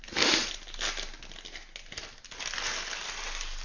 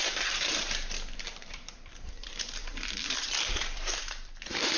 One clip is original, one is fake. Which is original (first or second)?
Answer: first